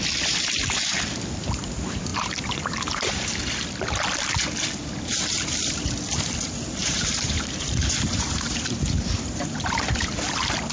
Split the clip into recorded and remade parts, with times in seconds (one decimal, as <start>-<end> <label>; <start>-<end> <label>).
0.0-2.1 recorded; 2.1-3.1 remade; 3.1-6.8 recorded; 6.8-10.1 remade; 10.1-10.7 recorded